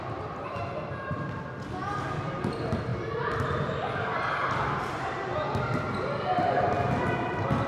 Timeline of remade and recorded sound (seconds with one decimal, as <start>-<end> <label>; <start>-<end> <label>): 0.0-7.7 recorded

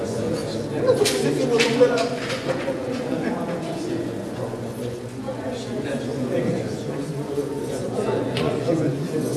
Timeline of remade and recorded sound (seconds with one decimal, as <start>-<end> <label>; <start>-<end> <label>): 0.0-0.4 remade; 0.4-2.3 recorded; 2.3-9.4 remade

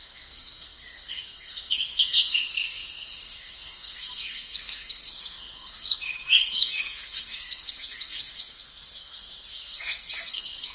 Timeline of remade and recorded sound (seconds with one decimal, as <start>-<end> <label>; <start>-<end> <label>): 0.0-10.7 remade

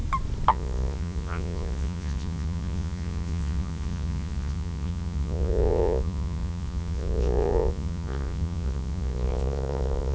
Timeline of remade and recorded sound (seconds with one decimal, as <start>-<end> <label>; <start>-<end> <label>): 0.0-0.5 recorded; 0.5-10.1 remade